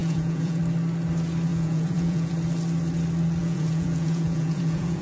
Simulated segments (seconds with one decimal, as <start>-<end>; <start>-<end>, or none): 0.0-0.6; 1.5-2.3; 3.4-5.0